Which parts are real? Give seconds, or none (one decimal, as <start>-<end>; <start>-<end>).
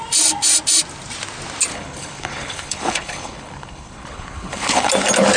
0.0-1.7; 4.9-5.4